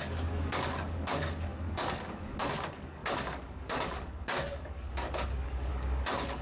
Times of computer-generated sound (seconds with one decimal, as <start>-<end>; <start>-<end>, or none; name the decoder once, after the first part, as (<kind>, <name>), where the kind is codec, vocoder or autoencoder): 0.0-6.4 (codec, DAC)